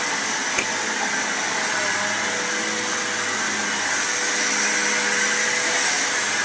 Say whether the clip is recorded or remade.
recorded